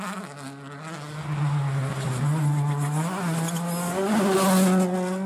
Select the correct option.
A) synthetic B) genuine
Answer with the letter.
B